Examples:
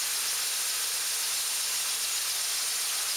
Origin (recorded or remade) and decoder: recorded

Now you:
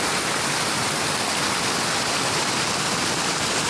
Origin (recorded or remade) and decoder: recorded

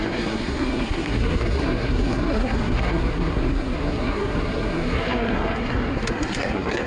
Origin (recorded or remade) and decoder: remade, codec, SNAC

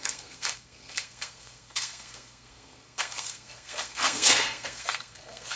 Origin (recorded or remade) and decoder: remade, codec, SNAC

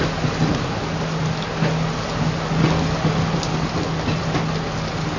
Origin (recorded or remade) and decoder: recorded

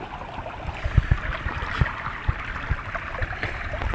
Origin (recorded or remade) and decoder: recorded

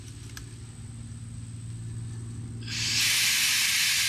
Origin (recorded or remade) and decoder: recorded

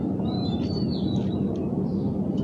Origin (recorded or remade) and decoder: recorded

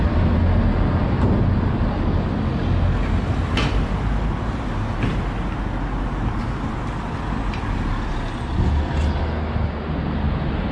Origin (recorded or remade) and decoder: recorded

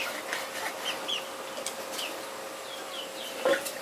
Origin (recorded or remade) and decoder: recorded